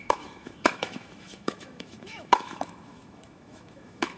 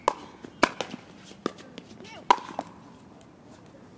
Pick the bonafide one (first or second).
second